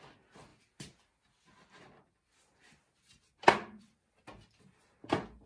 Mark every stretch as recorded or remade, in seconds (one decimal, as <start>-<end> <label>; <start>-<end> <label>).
0.0-5.5 recorded